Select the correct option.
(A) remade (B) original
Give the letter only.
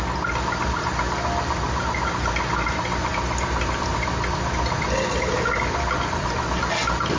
B